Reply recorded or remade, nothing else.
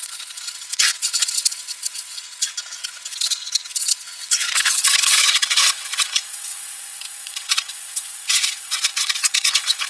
remade